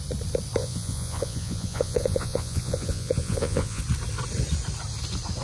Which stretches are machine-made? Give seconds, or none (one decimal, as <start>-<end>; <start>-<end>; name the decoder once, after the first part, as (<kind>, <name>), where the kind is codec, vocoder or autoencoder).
0.6-3.8 (vocoder, Vocos)